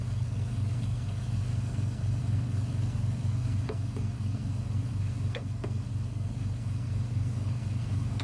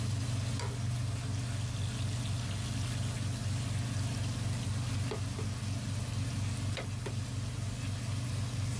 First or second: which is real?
second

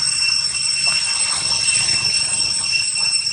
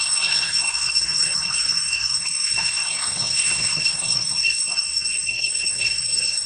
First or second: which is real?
first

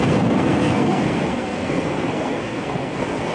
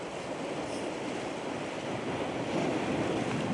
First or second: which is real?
second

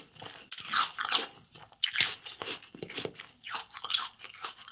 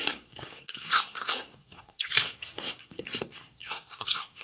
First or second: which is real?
first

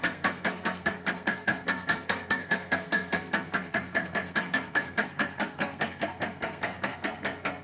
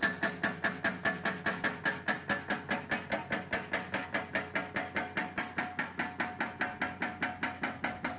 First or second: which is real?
second